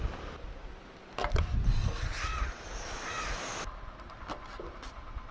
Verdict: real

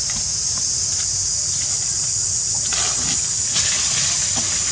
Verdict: real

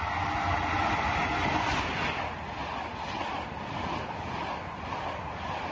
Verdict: real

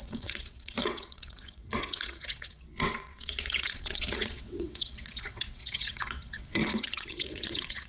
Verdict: fake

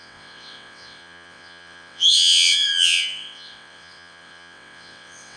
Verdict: fake